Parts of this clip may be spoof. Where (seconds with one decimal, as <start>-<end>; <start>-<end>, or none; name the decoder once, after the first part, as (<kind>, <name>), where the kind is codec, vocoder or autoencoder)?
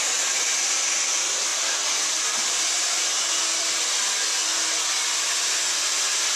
none